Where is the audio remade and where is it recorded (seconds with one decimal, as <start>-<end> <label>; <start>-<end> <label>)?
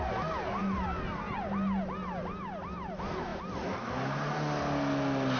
0.0-5.4 recorded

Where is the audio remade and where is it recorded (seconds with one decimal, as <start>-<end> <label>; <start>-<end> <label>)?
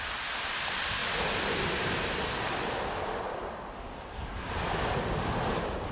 0.0-5.9 remade